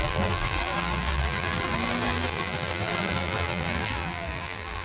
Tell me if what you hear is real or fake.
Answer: fake